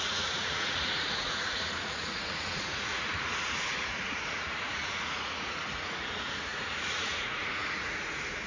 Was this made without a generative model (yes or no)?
no